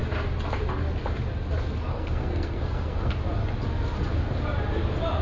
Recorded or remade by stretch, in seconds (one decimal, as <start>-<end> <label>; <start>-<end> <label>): 0.0-1.9 recorded; 1.9-3.1 remade; 3.1-5.2 recorded